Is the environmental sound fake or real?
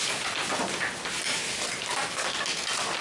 real